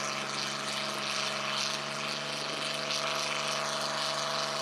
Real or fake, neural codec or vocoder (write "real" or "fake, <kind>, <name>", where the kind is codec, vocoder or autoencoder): real